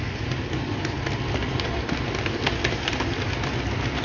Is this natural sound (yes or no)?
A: yes